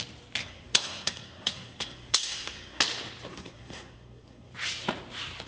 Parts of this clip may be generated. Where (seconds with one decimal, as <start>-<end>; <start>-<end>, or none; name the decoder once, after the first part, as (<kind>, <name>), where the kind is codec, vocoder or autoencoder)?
0.4-2.8 (codec, SNAC); 3.3-4.5